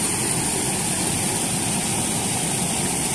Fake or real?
real